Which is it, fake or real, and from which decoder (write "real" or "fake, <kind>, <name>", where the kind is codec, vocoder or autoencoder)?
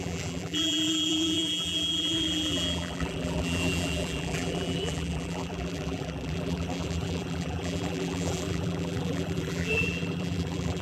fake, vocoder, BigVGAN v2